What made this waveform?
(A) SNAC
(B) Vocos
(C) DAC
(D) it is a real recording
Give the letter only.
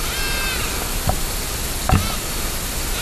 D